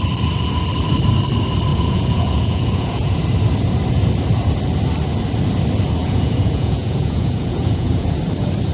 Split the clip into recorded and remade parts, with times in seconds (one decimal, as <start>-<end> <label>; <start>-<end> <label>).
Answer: 0.0-1.7 recorded; 1.7-3.2 remade; 3.2-6.0 recorded; 6.0-8.2 remade; 8.2-8.7 recorded

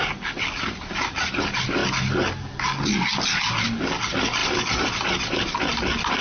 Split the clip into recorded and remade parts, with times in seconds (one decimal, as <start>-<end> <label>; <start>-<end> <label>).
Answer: 0.0-4.4 recorded; 4.4-5.7 remade; 5.7-6.2 recorded

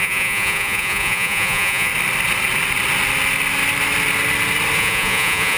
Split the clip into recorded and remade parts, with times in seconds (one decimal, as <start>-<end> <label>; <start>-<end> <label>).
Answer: 0.0-1.9 remade; 1.9-4.8 recorded; 4.8-5.6 remade

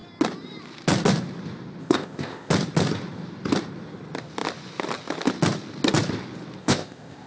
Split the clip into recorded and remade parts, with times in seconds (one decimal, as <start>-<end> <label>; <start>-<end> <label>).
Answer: 0.0-1.8 recorded; 1.8-2.5 remade; 2.5-6.6 recorded; 6.6-7.3 remade

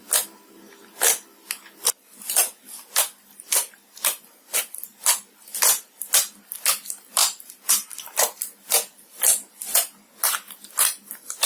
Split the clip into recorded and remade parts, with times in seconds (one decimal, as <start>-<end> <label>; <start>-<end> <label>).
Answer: 0.0-7.2 recorded; 7.2-7.9 remade; 7.9-11.5 recorded

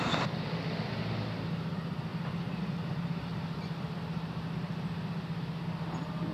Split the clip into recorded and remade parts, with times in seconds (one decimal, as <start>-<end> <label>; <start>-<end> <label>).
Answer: 0.0-2.1 recorded; 2.1-2.8 remade; 2.8-6.3 recorded